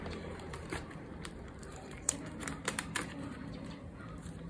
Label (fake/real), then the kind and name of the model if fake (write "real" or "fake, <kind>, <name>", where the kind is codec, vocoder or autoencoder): fake, vocoder, BigVGAN v2